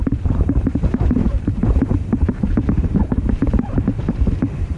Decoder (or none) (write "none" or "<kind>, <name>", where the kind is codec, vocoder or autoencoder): vocoder, BigVGAN v2